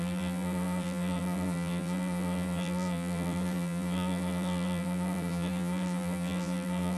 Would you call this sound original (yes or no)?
no